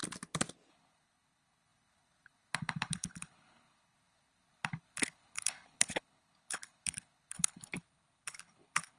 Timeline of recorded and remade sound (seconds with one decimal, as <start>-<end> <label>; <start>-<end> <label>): 0.0-0.7 recorded; 0.7-9.0 remade

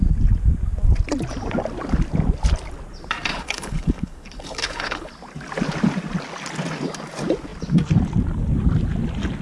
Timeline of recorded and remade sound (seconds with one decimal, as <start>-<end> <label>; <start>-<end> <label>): 0.0-3.3 recorded; 3.3-5.1 remade; 5.1-9.4 recorded

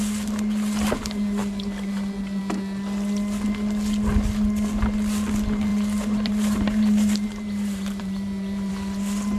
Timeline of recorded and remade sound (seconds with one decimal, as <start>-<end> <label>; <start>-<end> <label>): 0.0-5.7 recorded; 5.7-8.7 remade; 8.7-9.4 recorded

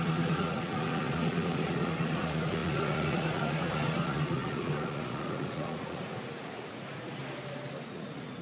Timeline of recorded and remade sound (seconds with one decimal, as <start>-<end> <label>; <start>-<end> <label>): 0.0-7.2 remade; 7.2-7.8 recorded; 7.8-8.4 remade